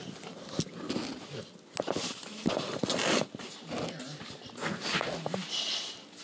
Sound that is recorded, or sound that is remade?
recorded